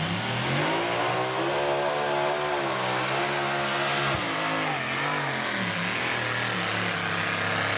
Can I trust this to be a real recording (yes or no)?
yes